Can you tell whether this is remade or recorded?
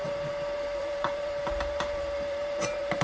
remade